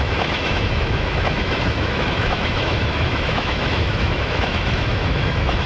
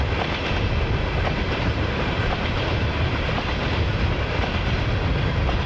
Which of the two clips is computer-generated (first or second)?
first